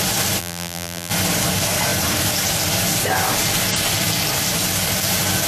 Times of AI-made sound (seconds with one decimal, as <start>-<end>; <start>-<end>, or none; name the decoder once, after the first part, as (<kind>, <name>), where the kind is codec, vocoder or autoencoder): 0.4-1.1 (vocoder, BigVGAN v2)